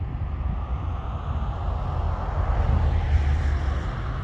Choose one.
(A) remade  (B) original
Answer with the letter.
B